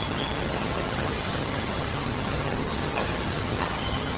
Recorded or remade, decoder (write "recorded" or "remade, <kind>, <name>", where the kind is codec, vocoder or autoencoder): remade, vocoder, HiFi-GAN